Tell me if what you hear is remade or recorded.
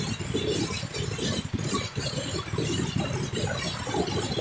recorded